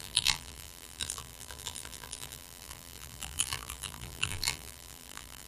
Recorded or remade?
remade